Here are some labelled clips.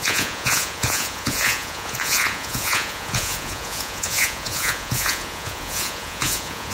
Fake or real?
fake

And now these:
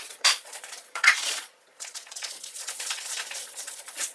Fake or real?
fake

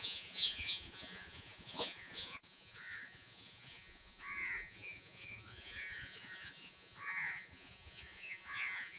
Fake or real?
fake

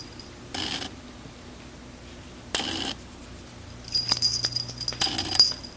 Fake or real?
real